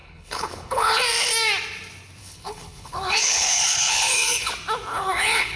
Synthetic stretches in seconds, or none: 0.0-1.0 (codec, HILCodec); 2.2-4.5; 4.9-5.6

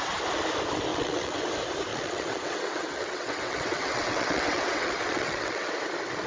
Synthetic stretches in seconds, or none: 0.9-1.5 (vocoder, WaveNeXt); 1.9-5.7

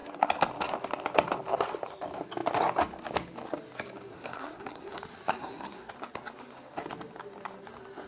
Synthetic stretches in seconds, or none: 4.1-4.9 (codec, SNAC); 5.4-5.9

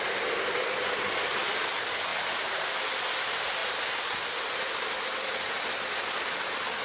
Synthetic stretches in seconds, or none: 2.1-2.8 (vocoder, BigVGAN v2)

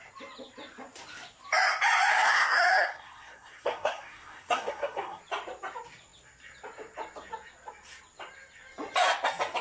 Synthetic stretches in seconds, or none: 2.1-5.2 (codec, SNAC)